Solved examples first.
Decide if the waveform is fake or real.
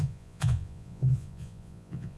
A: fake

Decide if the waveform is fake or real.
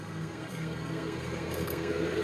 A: fake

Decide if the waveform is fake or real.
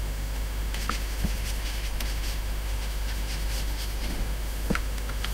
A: fake